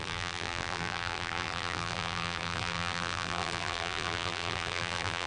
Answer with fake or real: fake